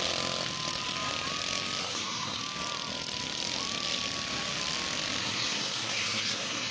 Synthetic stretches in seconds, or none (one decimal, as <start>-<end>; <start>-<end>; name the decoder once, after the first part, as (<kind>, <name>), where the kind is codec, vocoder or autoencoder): 1.8-2.4 (codec, SNAC); 5.2-6.7